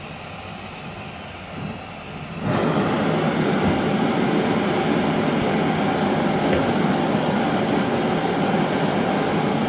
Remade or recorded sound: recorded